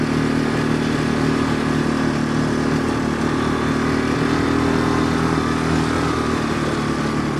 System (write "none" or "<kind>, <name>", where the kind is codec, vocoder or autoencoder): none